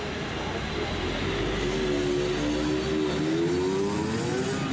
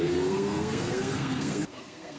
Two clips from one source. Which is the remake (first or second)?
second